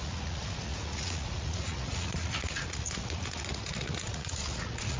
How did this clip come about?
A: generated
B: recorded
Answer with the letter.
A